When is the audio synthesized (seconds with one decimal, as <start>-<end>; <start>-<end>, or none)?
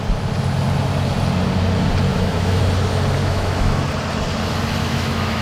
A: 2.1-2.6; 3.2-3.8; 4.8-5.4